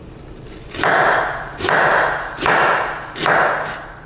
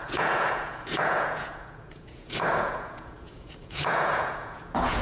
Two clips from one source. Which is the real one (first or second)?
first